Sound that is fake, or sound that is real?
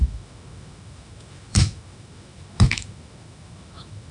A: fake